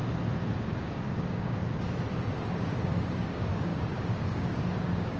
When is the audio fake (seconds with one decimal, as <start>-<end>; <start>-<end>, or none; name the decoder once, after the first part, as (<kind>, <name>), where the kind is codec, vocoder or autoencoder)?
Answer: 0.6-1.6 (codec, DAC); 2.5-5.2